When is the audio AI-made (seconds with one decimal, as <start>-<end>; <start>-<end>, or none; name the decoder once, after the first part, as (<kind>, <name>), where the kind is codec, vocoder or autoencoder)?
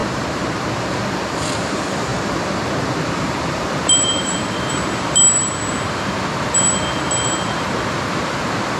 0.0-0.7 (vocoder, BigVGAN v2); 2.1-6.0